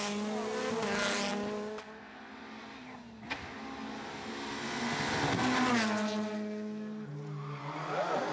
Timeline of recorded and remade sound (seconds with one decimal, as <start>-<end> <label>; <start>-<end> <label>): 0.0-8.3 recorded